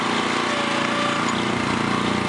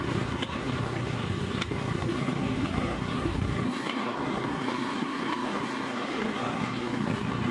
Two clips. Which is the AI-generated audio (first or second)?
second